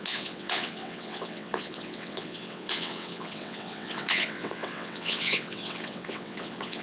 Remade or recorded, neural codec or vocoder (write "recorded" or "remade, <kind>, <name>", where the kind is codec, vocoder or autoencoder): remade, vocoder, WaveNeXt